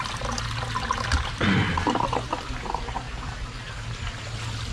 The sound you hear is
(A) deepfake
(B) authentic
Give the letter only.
B